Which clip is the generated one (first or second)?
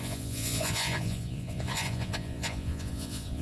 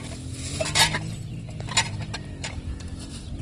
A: first